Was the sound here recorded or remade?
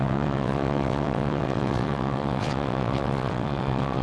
remade